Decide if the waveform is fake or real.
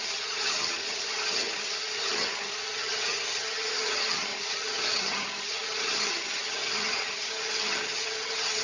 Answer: fake